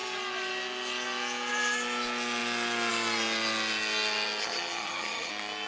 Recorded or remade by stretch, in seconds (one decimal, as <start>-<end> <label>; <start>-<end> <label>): 0.0-4.4 recorded; 4.4-5.3 remade; 5.3-5.7 recorded